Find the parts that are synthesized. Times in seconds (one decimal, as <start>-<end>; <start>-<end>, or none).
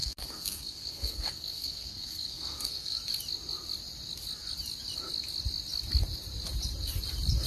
0.0-3.0